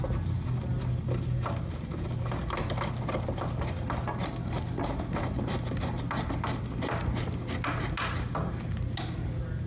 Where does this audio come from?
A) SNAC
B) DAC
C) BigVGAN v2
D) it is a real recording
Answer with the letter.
D